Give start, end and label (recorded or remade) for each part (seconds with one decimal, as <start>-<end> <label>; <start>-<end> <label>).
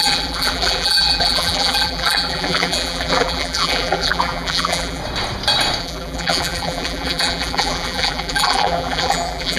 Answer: 0.0-5.0 remade; 5.0-5.8 recorded; 5.8-9.6 remade